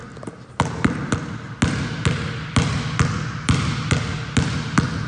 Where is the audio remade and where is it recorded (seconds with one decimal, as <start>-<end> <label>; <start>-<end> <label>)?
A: 0.0-5.1 recorded